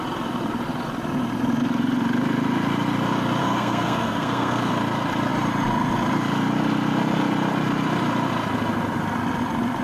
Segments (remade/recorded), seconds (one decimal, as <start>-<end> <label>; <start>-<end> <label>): 0.0-3.4 recorded; 3.4-4.7 remade; 4.7-9.8 recorded